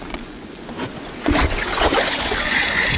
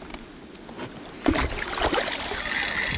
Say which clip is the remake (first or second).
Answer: first